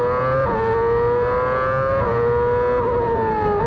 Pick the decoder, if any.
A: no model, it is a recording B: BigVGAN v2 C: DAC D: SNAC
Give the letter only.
A